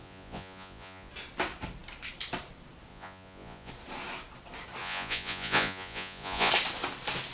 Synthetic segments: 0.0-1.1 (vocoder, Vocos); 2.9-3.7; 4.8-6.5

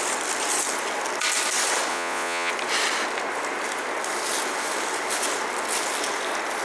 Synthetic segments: 1.9-2.5 (vocoder, Vocos)

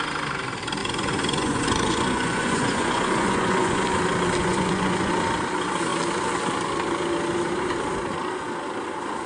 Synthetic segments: 0.8-3.8 (vocoder, Vocos); 4.4-5.1